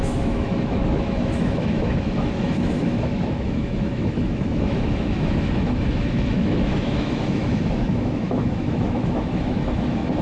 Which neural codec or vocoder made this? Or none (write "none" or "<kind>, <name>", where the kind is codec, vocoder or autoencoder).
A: autoencoder, DAC-VAE